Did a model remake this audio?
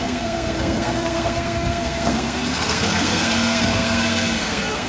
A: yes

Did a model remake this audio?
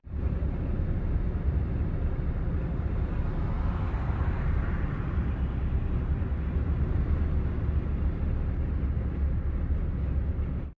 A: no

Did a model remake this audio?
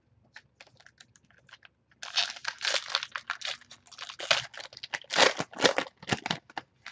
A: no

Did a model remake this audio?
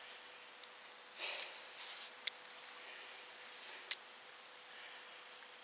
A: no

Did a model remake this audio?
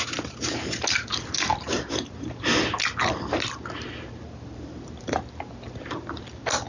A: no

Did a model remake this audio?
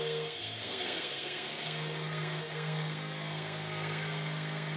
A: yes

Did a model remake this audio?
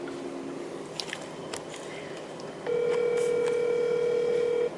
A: no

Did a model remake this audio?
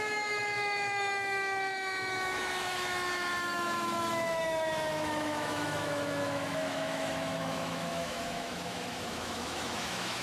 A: yes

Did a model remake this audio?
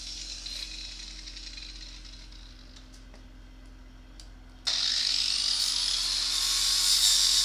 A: no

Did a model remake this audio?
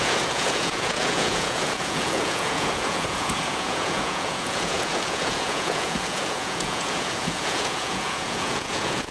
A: yes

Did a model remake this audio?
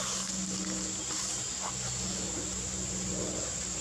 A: no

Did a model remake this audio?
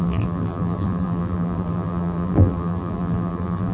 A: yes